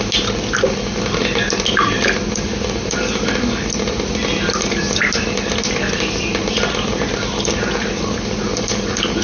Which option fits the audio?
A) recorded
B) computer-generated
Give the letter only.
A